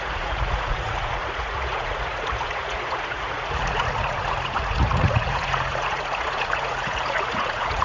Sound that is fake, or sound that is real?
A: fake